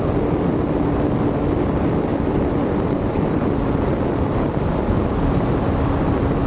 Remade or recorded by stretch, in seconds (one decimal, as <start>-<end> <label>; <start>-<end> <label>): 0.0-2.1 recorded; 2.1-5.6 remade; 5.6-6.5 recorded